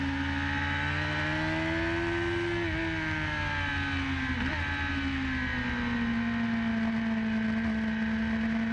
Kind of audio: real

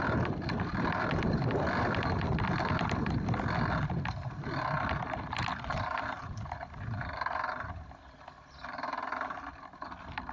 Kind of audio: real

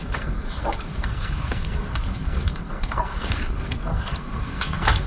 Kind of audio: fake